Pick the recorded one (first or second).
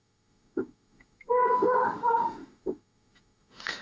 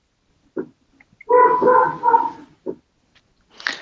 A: second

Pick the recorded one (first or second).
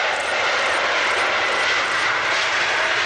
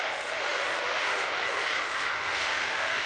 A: first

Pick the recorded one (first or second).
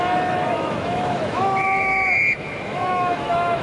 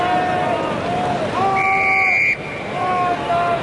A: second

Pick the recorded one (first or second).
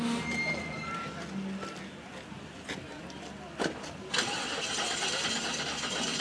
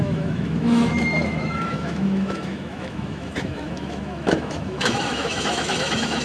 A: first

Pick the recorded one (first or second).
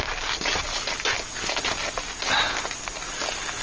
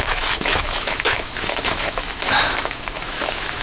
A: first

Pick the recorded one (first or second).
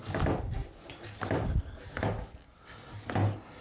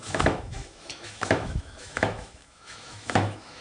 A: first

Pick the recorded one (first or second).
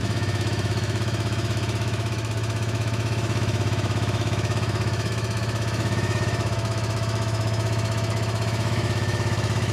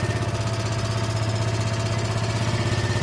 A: second